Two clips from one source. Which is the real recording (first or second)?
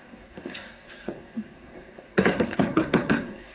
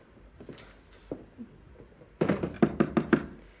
second